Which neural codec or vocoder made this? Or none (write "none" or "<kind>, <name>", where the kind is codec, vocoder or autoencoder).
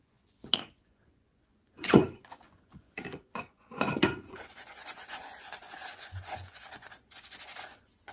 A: vocoder, Vocos